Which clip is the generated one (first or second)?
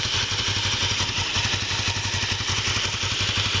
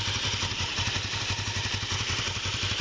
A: second